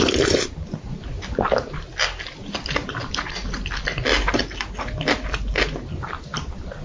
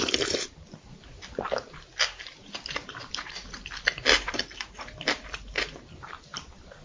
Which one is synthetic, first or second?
second